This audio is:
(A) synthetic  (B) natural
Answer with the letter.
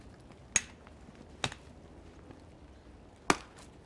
B